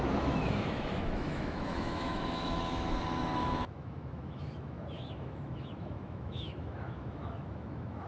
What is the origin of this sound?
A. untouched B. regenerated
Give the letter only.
B